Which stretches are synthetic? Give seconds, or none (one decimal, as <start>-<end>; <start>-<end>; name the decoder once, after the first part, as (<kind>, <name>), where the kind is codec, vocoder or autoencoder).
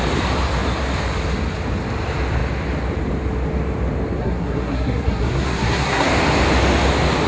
4.2-6.1 (codec, SNAC)